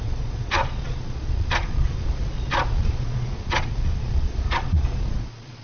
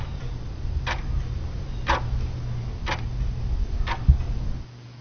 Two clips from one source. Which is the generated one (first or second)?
first